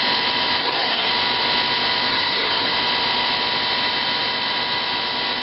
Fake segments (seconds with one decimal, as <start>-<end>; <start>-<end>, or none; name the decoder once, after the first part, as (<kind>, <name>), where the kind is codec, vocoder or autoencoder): 0.6-1.1 (codec, SNAC); 2.1-2.7